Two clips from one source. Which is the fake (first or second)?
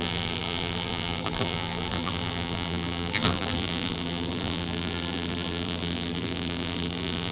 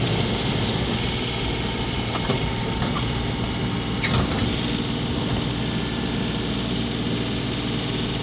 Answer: first